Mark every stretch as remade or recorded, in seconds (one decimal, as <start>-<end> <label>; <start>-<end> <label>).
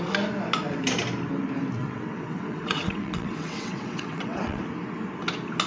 0.0-1.8 recorded; 1.8-4.6 remade; 4.6-5.7 recorded